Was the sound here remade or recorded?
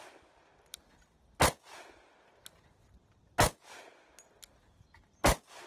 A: recorded